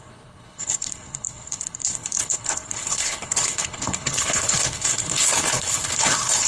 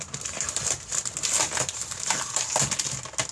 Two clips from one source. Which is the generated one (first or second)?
first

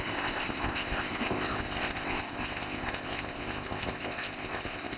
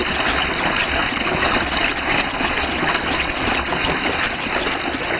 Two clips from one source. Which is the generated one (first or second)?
first